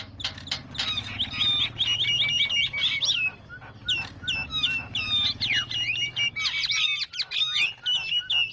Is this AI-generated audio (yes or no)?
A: no